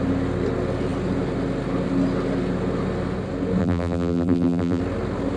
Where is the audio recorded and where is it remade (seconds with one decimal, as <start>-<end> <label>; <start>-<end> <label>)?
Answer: 0.0-3.6 recorded; 3.6-4.8 remade; 4.8-5.4 recorded